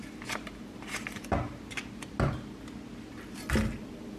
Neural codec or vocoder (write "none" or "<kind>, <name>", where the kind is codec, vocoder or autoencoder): none